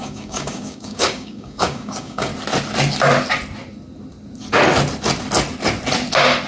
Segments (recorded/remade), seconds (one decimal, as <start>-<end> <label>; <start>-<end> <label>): 0.0-2.3 remade; 2.3-6.5 recorded